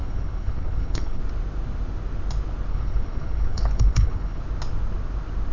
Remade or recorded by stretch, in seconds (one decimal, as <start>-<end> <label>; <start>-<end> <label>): 0.0-1.2 remade; 1.2-2.7 recorded; 2.7-4.4 remade; 4.4-5.5 recorded